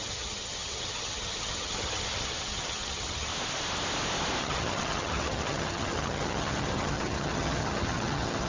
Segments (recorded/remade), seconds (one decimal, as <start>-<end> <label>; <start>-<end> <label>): 0.0-3.3 remade; 3.3-4.4 recorded; 4.4-8.5 remade